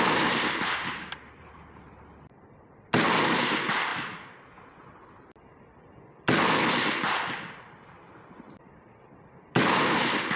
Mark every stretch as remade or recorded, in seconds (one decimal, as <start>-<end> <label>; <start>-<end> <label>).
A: 0.0-3.9 remade; 3.9-8.1 recorded; 8.1-10.4 remade